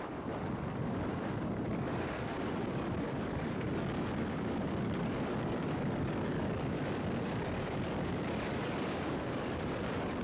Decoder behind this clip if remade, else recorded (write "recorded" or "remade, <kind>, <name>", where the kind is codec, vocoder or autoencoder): remade, codec, DAC